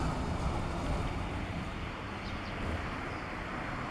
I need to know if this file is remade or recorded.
recorded